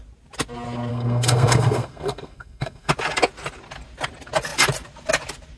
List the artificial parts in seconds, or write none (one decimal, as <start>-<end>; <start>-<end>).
0.9-2.9